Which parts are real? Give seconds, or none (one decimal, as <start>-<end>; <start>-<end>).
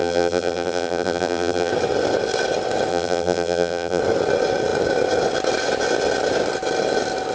1.7-2.9; 4.0-7.3